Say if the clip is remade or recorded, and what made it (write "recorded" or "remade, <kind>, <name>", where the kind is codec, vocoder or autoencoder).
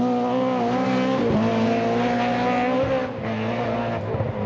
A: recorded